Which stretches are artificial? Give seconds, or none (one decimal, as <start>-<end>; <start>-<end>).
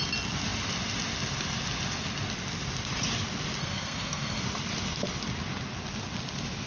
3.6-4.4